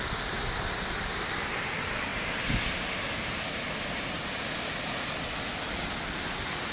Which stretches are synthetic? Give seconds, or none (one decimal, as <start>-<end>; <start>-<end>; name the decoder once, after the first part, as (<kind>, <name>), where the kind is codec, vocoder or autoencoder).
none